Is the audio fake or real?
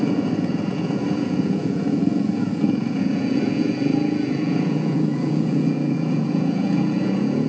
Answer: fake